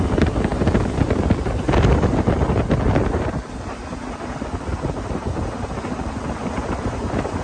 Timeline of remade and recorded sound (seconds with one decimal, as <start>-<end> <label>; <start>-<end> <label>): 0.0-7.4 recorded